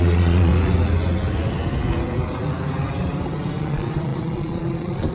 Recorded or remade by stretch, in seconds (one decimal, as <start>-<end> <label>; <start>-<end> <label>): 0.0-0.5 remade; 0.5-3.6 recorded; 3.6-5.1 remade